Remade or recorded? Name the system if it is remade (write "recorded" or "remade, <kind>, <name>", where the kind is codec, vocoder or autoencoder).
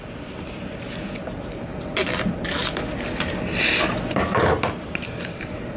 recorded